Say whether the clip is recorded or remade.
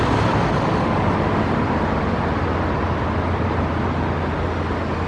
recorded